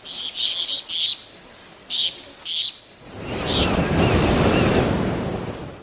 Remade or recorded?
recorded